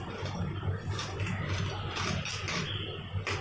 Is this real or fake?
real